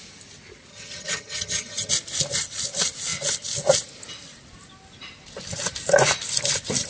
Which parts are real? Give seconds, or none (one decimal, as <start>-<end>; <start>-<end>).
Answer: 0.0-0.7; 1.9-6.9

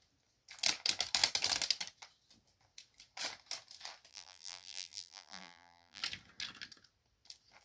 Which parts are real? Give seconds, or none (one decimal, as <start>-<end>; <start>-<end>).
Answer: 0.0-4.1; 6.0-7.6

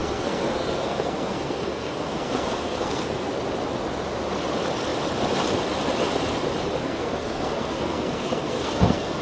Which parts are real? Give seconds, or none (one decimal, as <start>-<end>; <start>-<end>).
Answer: 3.3-6.8

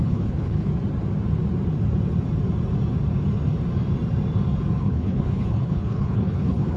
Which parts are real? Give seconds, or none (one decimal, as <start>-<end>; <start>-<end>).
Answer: 0.7-4.8